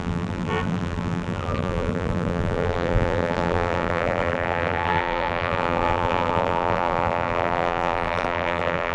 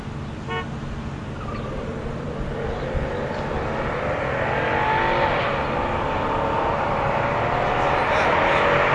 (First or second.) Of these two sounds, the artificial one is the first